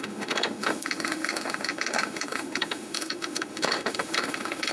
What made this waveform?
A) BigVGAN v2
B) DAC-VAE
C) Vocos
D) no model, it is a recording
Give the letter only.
B